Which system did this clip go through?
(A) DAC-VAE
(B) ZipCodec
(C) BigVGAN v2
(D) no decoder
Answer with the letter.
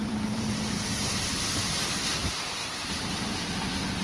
C